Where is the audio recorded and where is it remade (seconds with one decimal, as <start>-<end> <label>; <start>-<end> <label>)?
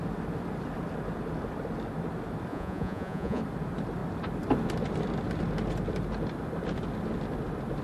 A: 0.0-2.5 recorded; 2.5-3.4 remade; 3.4-7.8 recorded